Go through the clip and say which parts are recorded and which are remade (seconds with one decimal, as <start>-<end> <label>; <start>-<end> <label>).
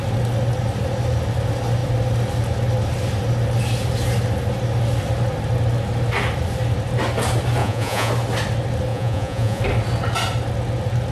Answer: 0.0-7.6 recorded; 7.6-8.1 remade; 8.1-8.9 recorded; 8.9-9.6 remade; 9.6-11.1 recorded